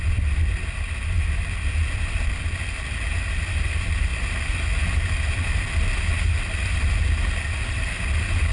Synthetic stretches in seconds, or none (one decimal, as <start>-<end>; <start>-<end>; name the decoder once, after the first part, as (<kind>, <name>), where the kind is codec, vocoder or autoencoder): none